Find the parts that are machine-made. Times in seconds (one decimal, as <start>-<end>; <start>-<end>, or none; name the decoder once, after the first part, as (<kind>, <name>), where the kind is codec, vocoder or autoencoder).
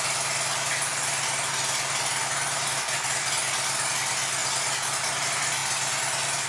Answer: none